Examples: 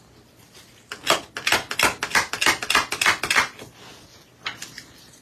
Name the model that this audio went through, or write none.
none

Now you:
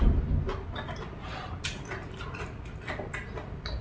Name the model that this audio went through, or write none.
none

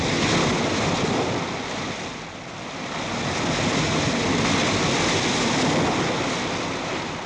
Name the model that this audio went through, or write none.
none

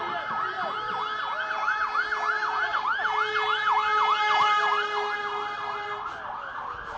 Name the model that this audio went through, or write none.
none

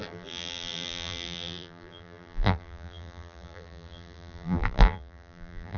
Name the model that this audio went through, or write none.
vocoder, BigVGAN v2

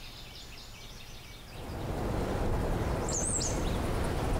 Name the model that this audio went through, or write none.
none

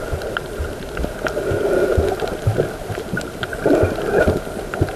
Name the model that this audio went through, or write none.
none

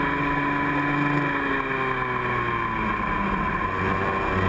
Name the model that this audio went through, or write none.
none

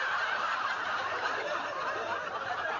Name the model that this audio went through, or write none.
vocoder, BigVGAN v2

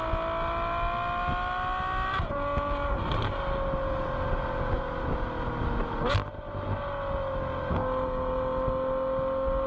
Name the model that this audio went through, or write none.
none